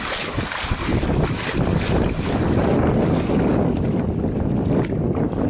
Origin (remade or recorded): recorded